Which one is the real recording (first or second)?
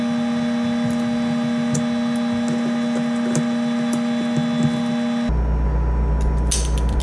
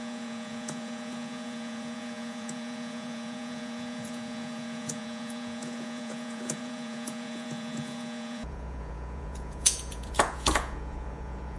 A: first